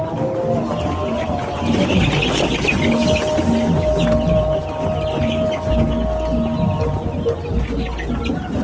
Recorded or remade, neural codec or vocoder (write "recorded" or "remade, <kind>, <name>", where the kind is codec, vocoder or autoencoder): recorded